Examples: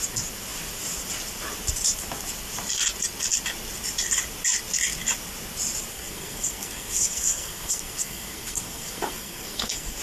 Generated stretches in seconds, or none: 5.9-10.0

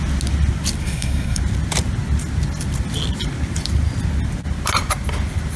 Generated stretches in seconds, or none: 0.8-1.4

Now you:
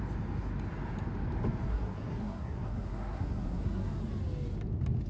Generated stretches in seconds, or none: 1.7-3.9